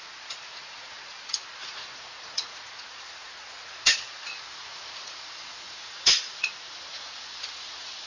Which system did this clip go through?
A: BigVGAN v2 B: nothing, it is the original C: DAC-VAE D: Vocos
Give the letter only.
D